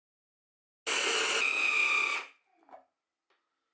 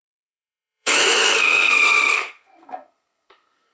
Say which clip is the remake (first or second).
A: second